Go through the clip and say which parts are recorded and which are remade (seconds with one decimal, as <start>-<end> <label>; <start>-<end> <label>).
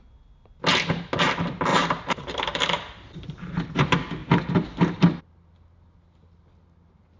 0.0-1.7 recorded; 1.7-3.7 remade; 3.7-7.2 recorded